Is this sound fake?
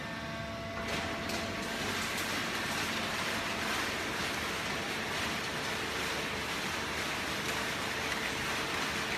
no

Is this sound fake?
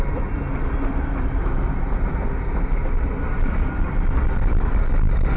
no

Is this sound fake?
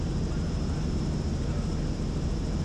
yes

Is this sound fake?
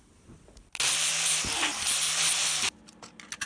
no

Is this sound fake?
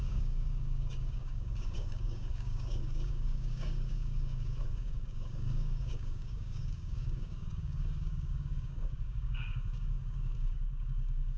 yes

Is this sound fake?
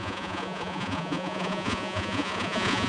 yes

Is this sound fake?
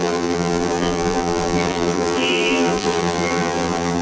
yes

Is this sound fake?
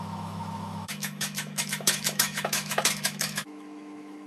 yes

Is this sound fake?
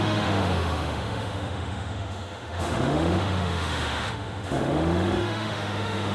yes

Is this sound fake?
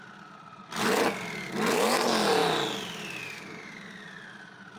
no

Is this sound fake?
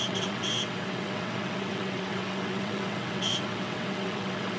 yes